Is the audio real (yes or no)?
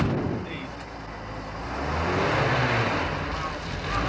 yes